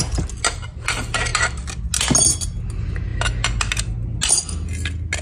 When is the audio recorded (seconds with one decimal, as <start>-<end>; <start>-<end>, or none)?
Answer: 0.0-5.2